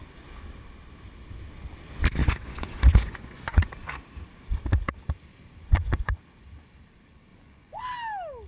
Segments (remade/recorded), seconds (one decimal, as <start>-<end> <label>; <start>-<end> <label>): 0.0-2.2 recorded; 2.2-3.7 remade; 3.7-5.6 recorded; 5.6-6.2 remade; 6.2-7.3 recorded; 7.3-7.8 remade; 7.8-8.5 recorded